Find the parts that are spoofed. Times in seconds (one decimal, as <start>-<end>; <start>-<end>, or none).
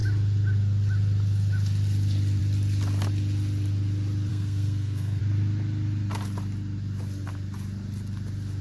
4.3-5.2